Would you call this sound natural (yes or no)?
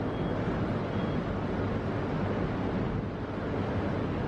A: yes